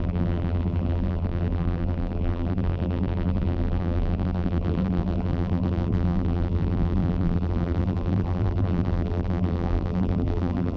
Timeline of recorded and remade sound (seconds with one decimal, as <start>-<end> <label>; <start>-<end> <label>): 0.0-10.8 remade

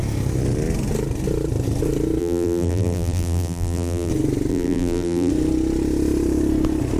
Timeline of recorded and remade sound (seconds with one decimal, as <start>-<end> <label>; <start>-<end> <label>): 0.0-2.2 recorded; 2.2-4.1 remade; 4.1-4.5 recorded; 4.5-5.3 remade; 5.3-7.0 recorded